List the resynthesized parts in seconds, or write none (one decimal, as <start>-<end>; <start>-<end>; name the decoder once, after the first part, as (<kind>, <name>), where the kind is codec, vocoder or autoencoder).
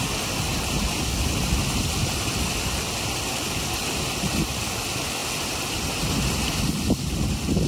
0.5-1.0 (vocoder, BigVGAN v2)